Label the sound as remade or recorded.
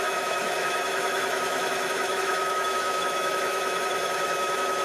remade